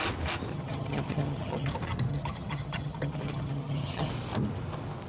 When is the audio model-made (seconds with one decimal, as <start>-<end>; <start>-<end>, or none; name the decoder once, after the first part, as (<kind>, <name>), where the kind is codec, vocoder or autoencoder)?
0.5-1.7 (vocoder, HiFi-GAN); 2.1-4.1